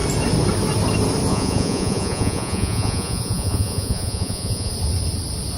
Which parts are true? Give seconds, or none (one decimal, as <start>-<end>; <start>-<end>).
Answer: 0.0-1.3; 4.7-5.6